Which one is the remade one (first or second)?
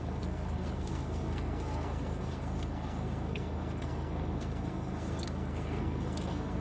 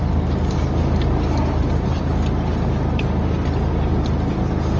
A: first